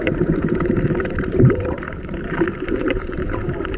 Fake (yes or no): yes